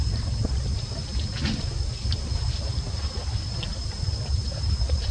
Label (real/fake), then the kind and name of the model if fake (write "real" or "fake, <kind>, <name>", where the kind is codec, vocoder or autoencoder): real